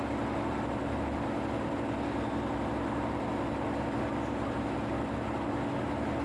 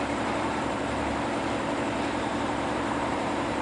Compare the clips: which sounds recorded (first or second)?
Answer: first